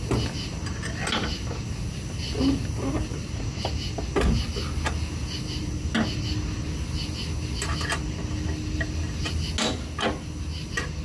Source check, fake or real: real